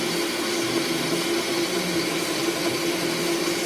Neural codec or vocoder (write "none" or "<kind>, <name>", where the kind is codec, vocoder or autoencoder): none